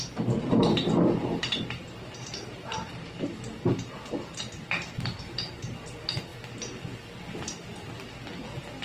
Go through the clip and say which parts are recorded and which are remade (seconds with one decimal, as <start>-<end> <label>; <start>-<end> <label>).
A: 0.0-6.3 remade; 6.3-8.8 recorded

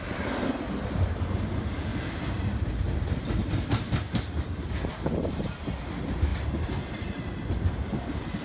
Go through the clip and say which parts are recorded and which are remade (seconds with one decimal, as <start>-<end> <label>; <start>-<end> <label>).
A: 0.0-8.4 recorded

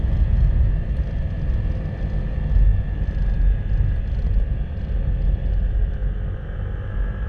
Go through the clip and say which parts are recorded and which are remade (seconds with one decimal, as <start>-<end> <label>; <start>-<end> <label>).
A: 0.0-7.3 recorded

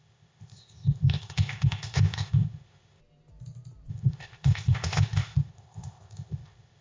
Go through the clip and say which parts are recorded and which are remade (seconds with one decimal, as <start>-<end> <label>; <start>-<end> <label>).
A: 0.0-3.0 remade; 3.0-3.9 recorded; 3.9-6.8 remade

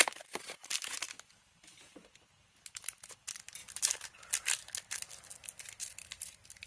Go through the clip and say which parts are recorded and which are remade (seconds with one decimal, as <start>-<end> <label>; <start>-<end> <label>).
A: 0.0-6.7 recorded

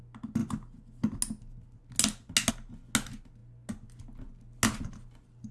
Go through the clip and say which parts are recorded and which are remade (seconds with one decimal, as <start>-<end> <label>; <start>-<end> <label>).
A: 0.0-5.5 recorded